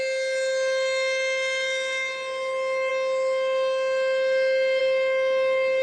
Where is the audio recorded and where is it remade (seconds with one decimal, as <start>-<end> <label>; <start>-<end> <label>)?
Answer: 0.0-5.8 recorded